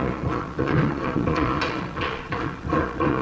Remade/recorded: remade